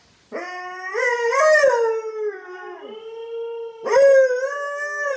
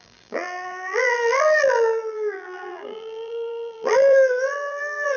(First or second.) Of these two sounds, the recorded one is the first